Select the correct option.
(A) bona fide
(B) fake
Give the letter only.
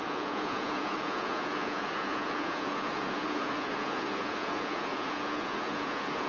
B